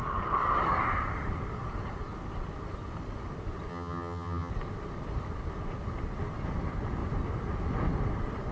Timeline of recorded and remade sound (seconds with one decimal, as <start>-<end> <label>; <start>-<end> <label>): 0.0-3.7 recorded; 3.7-4.5 remade; 4.5-8.5 recorded